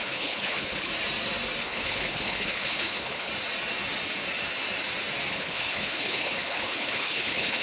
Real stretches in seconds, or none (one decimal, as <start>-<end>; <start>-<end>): 0.9-1.6; 3.3-5.3